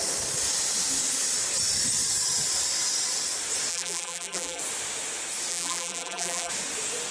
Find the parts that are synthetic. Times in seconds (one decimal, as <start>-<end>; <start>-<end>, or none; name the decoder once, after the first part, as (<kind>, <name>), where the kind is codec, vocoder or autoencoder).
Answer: 3.7-4.6 (vocoder, BigVGAN v2); 5.5-6.5